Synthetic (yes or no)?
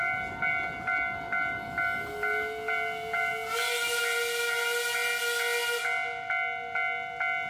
no